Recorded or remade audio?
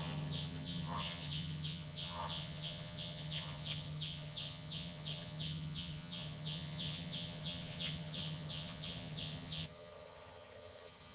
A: remade